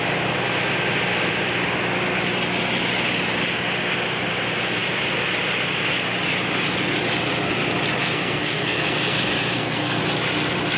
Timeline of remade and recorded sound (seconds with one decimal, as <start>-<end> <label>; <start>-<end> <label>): 0.0-8.0 recorded; 8.0-10.0 remade; 10.0-10.8 recorded

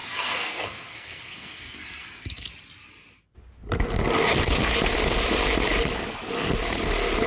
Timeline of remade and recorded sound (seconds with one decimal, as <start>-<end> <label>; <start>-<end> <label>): 0.0-2.5 remade; 2.5-7.3 recorded

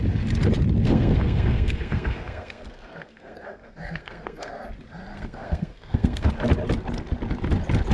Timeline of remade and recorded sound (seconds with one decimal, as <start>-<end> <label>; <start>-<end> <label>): 0.0-0.8 recorded; 0.8-4.5 remade; 4.5-5.1 recorded; 5.1-6.3 remade; 6.3-7.9 recorded

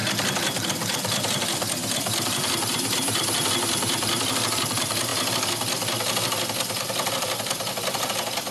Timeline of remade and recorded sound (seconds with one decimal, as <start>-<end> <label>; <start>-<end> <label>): 0.0-8.5 recorded